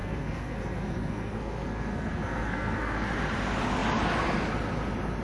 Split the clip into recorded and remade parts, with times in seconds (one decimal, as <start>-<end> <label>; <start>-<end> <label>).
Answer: 0.0-3.1 remade; 3.1-5.2 recorded